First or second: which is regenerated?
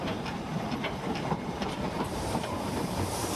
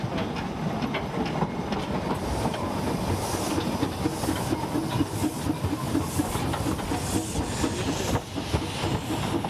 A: first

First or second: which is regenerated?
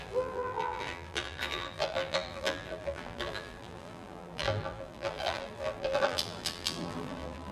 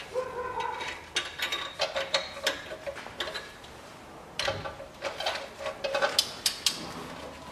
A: first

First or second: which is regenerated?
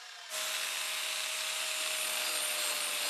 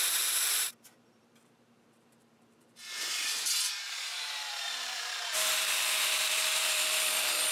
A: second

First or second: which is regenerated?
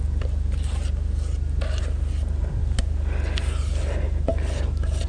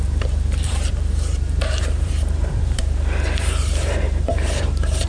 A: second